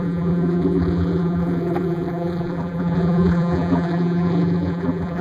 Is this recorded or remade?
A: remade